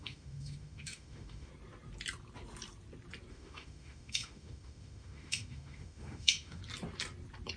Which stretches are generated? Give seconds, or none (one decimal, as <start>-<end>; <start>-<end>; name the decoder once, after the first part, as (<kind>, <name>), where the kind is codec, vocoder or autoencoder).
0.0-1.5 (autoencoder, DAC-VAE); 3.3-6.6